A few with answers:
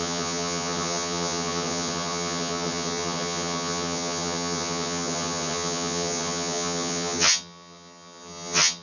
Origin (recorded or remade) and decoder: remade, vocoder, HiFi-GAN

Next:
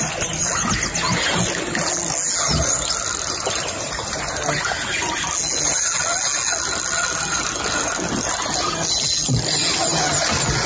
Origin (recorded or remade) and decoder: recorded